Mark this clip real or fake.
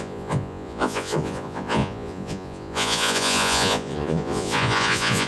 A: fake